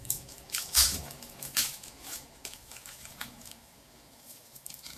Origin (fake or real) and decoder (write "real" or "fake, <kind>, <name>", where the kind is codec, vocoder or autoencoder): fake, autoencoder, DAC-VAE